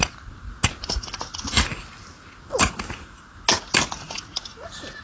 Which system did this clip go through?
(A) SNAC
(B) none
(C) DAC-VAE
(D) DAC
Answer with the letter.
B